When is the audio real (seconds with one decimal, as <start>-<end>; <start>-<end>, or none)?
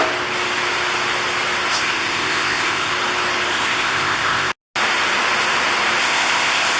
0.0-1.7; 2.9-3.5; 4.5-6.0